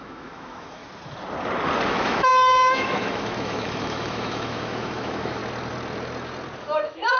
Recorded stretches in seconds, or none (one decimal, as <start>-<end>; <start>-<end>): 0.8-1.9; 5.4-6.6